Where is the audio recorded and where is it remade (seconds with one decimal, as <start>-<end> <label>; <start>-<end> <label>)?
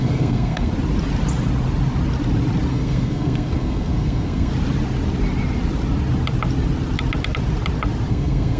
0.0-0.7 remade; 0.7-2.7 recorded; 2.7-4.5 remade; 4.5-8.1 recorded; 8.1-8.6 remade